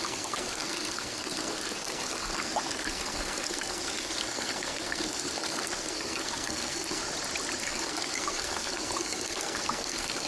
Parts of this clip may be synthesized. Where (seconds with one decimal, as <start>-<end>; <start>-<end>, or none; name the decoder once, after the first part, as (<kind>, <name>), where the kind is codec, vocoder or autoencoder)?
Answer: 0.0-7.0 (codec, SNAC); 7.6-10.3